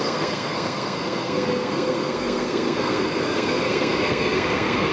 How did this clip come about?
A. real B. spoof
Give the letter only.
B